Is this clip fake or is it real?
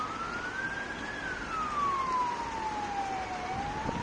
real